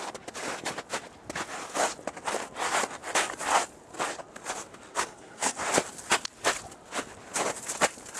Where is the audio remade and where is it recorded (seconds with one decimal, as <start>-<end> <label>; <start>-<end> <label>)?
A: 0.0-4.9 recorded; 4.9-5.6 remade; 5.6-8.2 recorded